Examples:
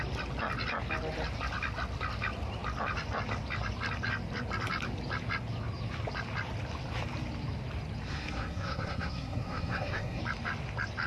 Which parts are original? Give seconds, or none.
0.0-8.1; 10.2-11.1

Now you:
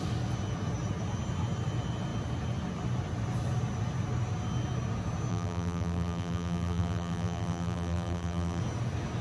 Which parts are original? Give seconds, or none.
0.0-5.3; 8.6-9.2

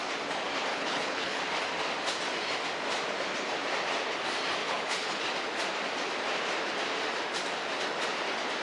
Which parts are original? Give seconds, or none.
0.0-0.7; 1.4-4.6; 5.2-8.6

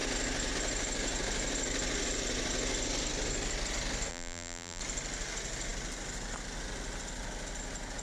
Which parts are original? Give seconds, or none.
0.0-4.1; 4.8-8.0

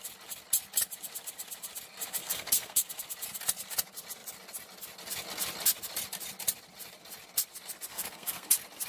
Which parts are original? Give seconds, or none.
0.0-2.2; 2.9-7.9; 8.5-8.9